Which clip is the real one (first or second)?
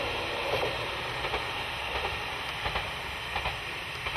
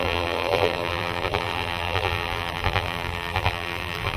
first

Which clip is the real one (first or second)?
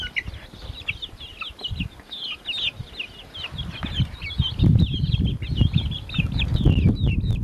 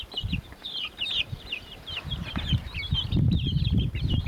first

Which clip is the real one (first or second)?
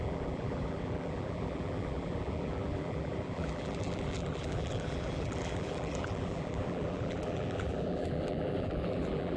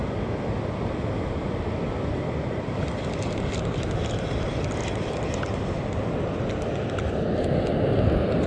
second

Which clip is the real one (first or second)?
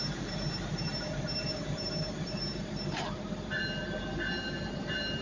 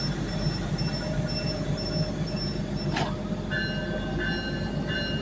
second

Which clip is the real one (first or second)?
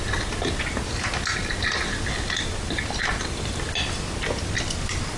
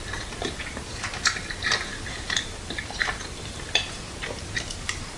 first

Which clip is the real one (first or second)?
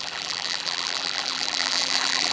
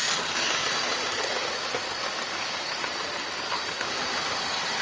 second